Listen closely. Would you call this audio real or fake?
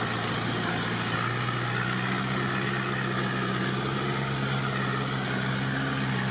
real